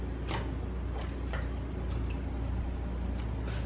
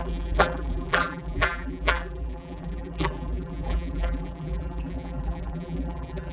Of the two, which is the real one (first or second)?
first